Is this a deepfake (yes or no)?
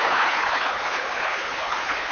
yes